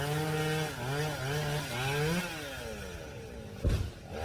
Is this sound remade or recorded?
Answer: recorded